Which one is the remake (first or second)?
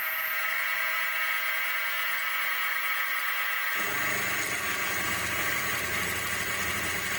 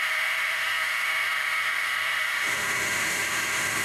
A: second